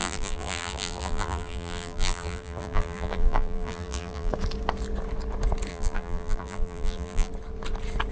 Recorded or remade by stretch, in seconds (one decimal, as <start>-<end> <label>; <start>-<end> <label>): 0.0-4.3 remade; 4.3-5.7 recorded; 5.7-7.3 remade; 7.3-8.1 recorded